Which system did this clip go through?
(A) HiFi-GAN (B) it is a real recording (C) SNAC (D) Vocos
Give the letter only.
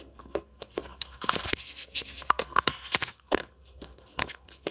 C